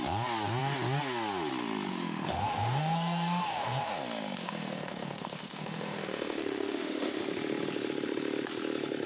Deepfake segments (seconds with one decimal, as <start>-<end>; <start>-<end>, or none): 1.9-3.9; 4.4-7.2